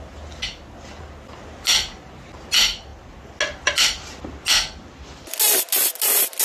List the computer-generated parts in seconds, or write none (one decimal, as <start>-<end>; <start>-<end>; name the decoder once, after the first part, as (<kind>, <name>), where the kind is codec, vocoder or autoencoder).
none